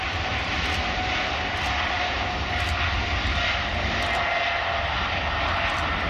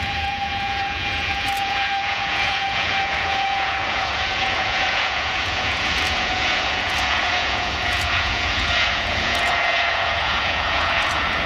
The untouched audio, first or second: first